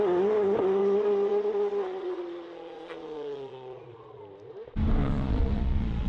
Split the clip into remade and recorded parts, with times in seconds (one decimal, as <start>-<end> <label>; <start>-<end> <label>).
0.0-0.8 recorded; 0.8-4.2 remade; 4.2-5.0 recorded; 5.0-6.1 remade